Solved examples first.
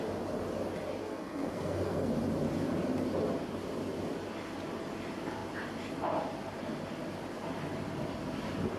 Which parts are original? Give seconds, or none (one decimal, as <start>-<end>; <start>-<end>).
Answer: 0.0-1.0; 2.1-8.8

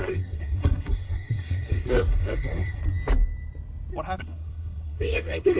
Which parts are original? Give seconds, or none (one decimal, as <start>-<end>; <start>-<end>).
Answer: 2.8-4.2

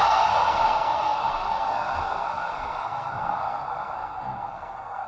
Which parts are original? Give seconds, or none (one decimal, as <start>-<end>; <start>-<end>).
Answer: none

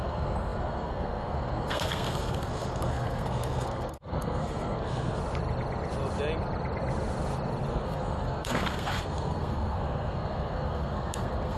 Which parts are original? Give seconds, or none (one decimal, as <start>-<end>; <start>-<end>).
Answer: 5.2-7.7

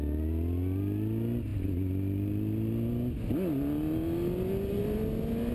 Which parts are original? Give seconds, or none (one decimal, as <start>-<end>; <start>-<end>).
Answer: 0.0-5.5

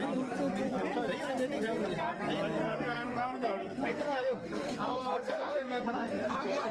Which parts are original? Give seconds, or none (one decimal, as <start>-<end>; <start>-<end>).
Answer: 0.0-2.6

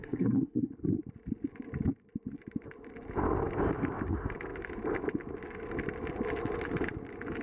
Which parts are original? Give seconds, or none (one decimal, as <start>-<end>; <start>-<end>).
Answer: 0.7-7.4

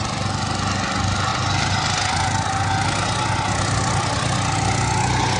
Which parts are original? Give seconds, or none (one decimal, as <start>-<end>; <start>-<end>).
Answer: 0.0-5.4